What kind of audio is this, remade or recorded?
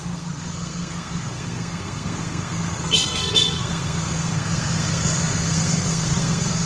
remade